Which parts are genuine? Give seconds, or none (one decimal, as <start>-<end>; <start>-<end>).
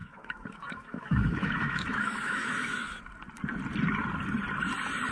3.0-5.1